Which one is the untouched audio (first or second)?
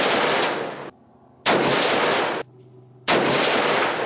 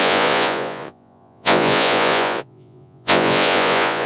first